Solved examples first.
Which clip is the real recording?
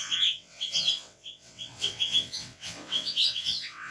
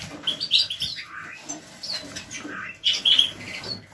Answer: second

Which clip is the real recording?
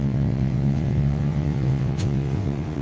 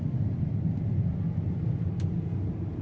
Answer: second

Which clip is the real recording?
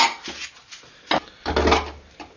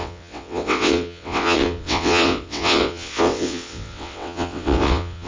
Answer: first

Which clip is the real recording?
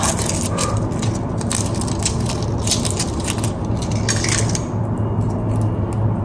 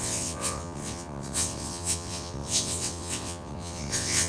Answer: first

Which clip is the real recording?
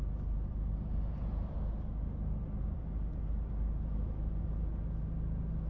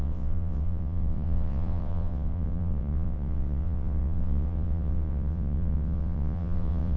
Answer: first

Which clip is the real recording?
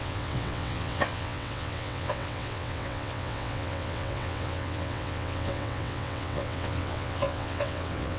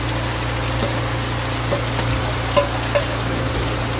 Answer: second